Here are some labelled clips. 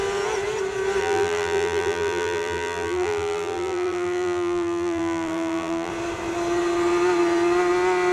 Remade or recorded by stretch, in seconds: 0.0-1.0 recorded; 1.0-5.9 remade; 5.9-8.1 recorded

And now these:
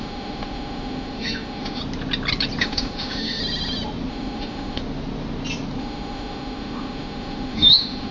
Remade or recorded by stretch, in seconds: 0.0-1.8 remade; 1.8-2.6 recorded; 2.6-3.4 remade; 3.4-4.1 recorded; 4.1-4.8 remade; 4.8-5.8 recorded; 5.8-8.1 remade

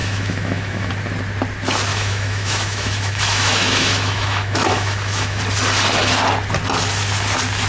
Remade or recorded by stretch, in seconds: 0.0-0.9 remade; 0.9-1.9 recorded; 1.9-5.4 remade; 5.4-7.7 recorded

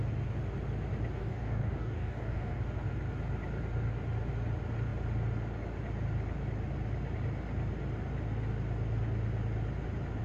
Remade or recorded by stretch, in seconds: 0.0-1.2 recorded; 1.2-2.6 remade; 2.6-10.2 recorded

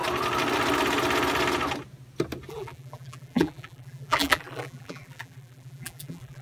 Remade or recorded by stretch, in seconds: 0.0-2.5 recorded; 2.5-6.4 remade